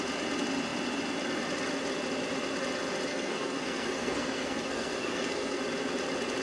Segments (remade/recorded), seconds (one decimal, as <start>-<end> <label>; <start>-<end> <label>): 0.0-3.1 recorded; 3.1-5.6 remade; 5.6-6.4 recorded